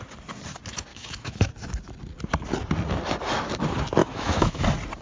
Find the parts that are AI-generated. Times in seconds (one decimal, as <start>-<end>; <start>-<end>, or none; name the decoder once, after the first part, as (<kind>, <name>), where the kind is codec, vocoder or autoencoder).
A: 0.9-1.5 (autoencoder, DAC-VAE); 4.0-4.6